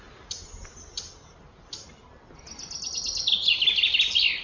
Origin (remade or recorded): recorded